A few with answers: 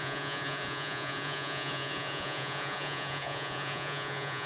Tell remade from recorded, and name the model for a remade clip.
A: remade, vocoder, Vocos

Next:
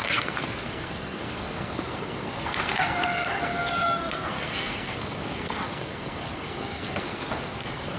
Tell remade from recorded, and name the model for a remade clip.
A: remade, codec, SNAC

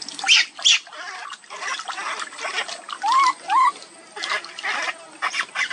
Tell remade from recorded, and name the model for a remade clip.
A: recorded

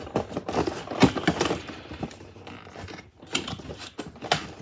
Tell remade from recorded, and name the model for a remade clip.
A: recorded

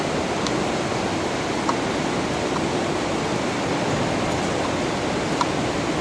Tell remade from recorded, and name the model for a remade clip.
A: recorded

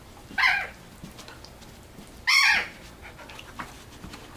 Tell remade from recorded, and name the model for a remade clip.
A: recorded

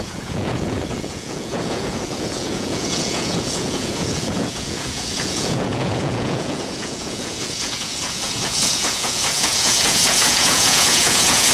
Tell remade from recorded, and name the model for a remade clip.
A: remade, vocoder, Vocos